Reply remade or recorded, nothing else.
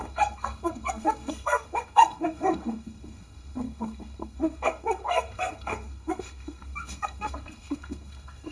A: remade